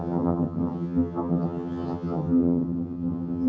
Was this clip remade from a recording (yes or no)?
yes